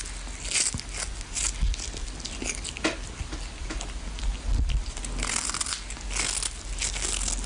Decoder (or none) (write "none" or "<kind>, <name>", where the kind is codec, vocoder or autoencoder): none